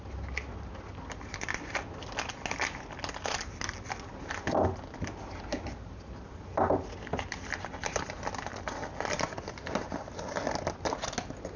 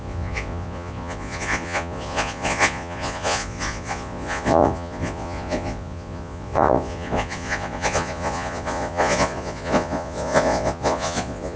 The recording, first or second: first